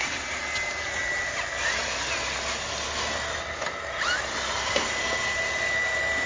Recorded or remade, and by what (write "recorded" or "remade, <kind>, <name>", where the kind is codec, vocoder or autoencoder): recorded